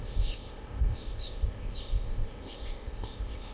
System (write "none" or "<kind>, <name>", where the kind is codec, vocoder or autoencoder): codec, ZipCodec